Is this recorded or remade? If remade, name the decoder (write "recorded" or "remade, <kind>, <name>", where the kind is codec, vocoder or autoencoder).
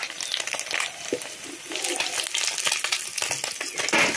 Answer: recorded